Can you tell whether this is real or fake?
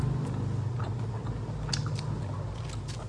real